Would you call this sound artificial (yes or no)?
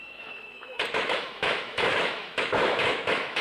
yes